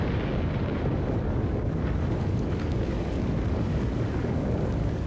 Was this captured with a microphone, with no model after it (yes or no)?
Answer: no